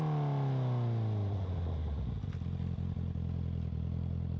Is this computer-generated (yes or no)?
no